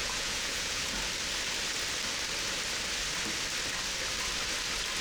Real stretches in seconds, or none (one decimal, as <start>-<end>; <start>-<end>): 1.0-5.0